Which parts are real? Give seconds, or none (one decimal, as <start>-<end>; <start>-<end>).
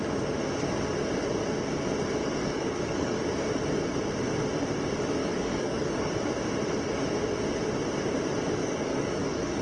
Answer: 0.0-2.2; 3.2-5.2; 6.1-8.6